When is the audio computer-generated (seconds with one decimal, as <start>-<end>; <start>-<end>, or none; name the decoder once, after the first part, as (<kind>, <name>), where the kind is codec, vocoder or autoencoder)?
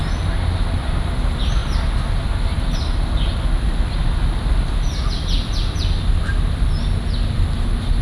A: none